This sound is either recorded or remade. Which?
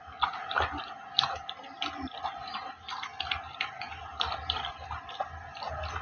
recorded